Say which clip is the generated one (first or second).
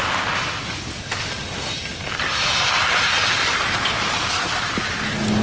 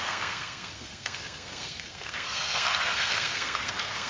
second